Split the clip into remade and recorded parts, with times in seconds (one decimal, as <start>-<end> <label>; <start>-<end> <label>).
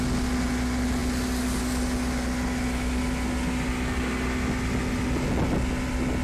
0.0-6.2 recorded